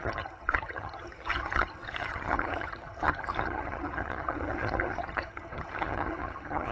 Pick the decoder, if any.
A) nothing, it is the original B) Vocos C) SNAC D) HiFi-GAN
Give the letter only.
D